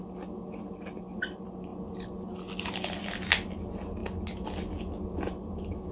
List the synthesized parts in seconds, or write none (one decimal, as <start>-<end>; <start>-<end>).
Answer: none